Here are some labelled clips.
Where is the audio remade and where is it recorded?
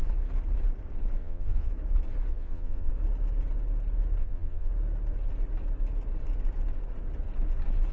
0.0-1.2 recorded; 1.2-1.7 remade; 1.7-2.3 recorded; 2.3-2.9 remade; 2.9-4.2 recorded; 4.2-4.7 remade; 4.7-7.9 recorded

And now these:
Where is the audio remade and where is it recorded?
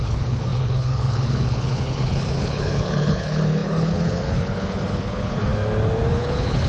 0.0-5.5 remade; 5.5-6.1 recorded; 6.1-6.7 remade